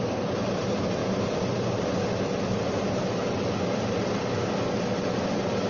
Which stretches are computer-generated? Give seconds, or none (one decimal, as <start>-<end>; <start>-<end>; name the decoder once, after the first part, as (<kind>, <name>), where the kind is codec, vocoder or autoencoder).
none